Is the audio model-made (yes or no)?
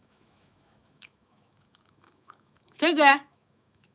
yes